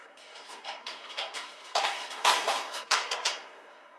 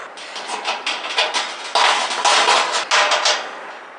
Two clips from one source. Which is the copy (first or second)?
first